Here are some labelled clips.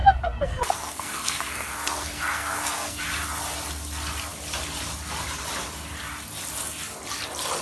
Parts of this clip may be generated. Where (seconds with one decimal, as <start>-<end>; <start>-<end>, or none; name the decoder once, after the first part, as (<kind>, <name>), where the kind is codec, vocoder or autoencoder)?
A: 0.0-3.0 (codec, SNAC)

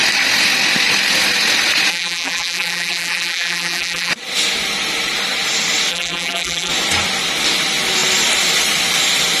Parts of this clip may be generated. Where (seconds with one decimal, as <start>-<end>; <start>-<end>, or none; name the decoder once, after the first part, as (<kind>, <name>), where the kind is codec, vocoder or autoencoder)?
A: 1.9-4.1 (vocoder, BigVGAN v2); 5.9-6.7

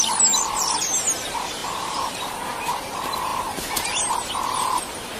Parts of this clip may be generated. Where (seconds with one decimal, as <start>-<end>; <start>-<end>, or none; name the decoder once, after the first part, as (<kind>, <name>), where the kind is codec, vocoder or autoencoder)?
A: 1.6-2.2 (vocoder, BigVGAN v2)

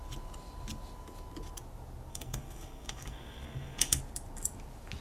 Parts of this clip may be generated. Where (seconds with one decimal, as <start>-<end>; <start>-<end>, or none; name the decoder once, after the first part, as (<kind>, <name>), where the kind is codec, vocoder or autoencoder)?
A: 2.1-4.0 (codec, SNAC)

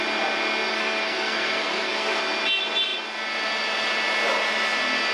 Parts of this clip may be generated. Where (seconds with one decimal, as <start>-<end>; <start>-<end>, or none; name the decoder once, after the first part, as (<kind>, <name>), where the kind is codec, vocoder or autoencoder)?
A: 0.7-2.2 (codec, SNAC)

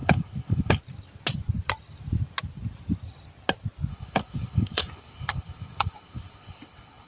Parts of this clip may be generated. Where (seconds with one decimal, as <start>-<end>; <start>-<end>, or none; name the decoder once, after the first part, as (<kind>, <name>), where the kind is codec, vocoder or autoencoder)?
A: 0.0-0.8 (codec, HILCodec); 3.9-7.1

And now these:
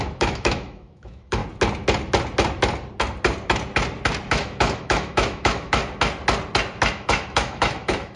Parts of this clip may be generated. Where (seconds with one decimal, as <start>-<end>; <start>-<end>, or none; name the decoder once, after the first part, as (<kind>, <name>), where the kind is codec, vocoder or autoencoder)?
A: 0.0-1.4 (autoencoder, DAC-VAE); 4.3-5.8; 6.9-8.2

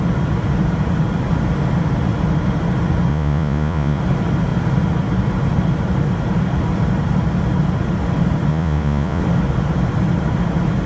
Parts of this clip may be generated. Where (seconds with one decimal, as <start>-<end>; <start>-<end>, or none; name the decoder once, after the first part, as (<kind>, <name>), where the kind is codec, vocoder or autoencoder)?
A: 3.1-4.0 (vocoder, Vocos); 8.5-9.2